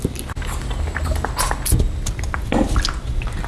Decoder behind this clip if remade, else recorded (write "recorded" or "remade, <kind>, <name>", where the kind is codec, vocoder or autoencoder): recorded